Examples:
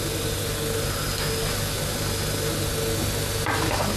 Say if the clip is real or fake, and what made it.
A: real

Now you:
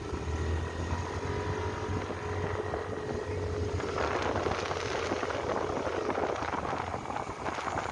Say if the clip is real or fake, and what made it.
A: real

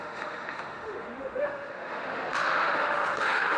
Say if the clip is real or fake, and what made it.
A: fake, autoencoder, DAC-VAE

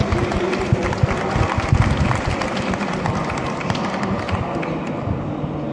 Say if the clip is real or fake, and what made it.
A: real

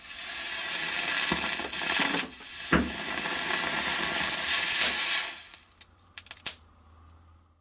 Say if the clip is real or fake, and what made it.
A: real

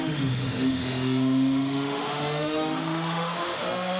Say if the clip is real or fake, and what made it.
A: fake, autoencoder, DAC-VAE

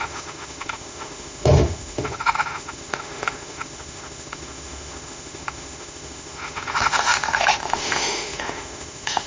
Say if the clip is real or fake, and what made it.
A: fake, autoencoder, DAC-VAE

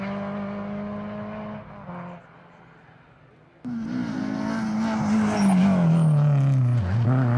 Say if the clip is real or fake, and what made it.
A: real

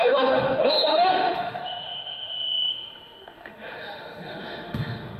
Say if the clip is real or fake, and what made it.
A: fake, autoencoder, DAC-VAE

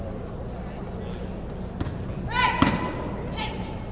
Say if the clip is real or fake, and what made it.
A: real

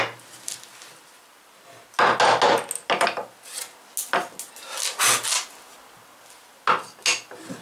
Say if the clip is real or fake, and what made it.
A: real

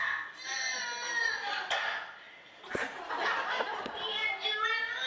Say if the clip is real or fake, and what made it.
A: real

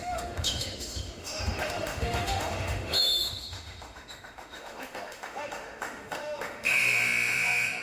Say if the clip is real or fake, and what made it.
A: fake, autoencoder, DAC-VAE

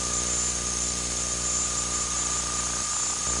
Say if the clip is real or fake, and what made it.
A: real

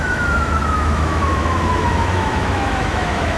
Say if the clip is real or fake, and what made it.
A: fake, autoencoder, DAC-VAE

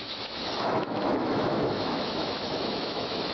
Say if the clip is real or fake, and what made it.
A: fake, autoencoder, DAC-VAE